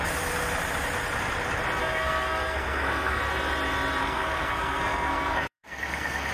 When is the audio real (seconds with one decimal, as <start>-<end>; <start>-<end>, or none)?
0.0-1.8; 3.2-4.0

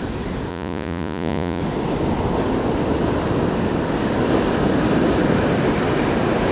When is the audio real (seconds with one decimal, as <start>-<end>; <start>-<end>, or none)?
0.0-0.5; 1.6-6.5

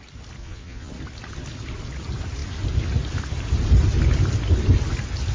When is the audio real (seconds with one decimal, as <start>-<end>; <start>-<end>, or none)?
0.0-0.4; 0.9-5.3

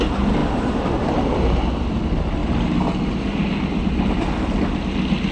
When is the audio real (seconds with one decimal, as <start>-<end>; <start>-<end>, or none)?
0.0-5.3

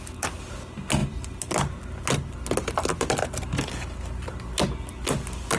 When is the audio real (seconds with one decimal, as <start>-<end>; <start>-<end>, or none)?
0.0-5.6

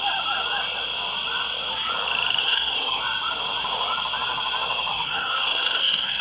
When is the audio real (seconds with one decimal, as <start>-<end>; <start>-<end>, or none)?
0.0-2.4; 3.0-4.9